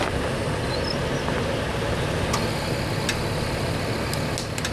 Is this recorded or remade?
recorded